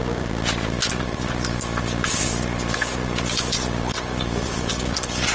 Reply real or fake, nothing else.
real